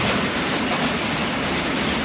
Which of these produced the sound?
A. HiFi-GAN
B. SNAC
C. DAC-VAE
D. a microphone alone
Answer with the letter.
D